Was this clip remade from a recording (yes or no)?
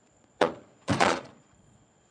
yes